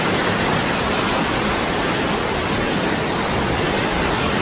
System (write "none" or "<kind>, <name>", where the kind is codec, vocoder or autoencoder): none